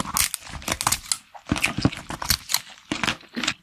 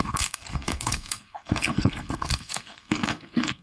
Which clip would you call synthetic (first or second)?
second